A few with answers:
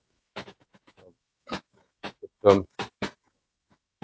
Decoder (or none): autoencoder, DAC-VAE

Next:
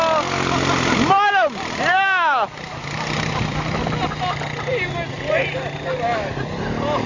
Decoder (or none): none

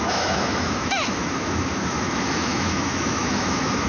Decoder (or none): autoencoder, DAC-VAE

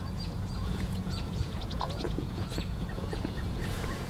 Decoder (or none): vocoder, Vocos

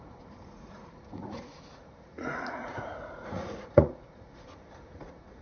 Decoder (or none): vocoder, Vocos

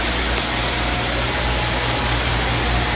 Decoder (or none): none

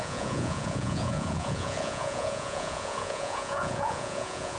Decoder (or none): vocoder, Vocos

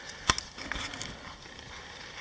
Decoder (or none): none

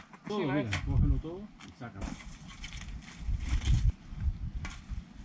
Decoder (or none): none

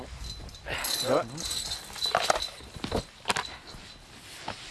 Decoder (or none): none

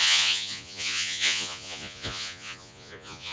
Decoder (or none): vocoder, Vocos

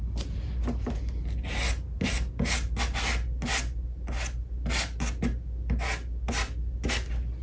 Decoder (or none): none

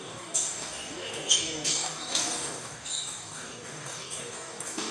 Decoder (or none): codec, DAC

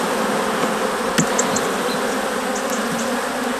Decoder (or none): none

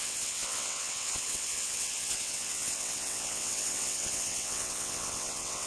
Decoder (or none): vocoder, WaveNeXt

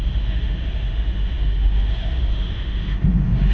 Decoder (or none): autoencoder, DAC-VAE